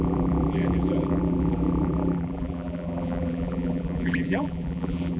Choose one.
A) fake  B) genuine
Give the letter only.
A